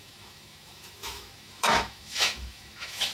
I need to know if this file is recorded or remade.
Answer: remade